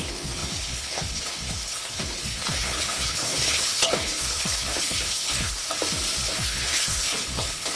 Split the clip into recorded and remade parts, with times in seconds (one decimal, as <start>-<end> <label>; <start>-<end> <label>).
0.0-5.6 remade; 5.6-6.3 recorded; 6.3-7.8 remade